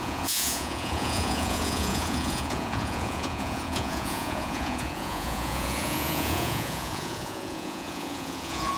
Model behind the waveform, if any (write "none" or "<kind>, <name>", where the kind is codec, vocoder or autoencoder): vocoder, Vocos